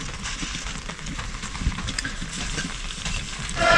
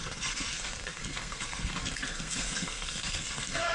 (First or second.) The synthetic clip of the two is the second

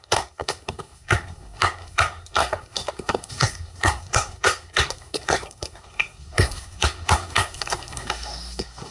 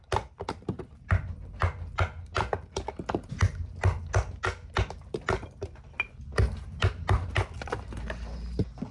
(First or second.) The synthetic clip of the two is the first